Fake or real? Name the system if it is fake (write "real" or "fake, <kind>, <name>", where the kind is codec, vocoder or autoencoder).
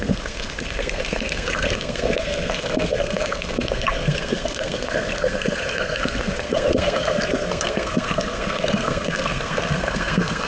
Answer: fake, codec, SNAC